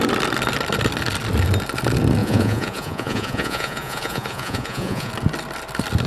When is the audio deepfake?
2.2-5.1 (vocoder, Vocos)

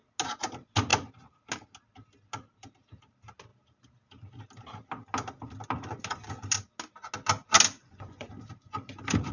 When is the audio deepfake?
7.8-8.3 (vocoder, Vocos)

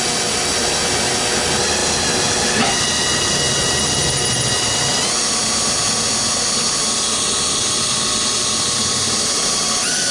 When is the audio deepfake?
none

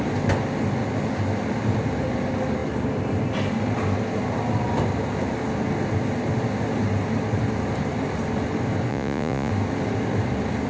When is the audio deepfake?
8.9-9.5 (vocoder, Vocos)

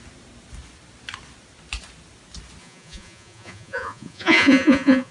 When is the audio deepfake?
2.6-5.1 (vocoder, Vocos)

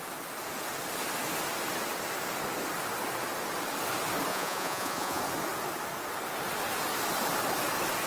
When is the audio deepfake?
4.3-5.2 (vocoder, Vocos)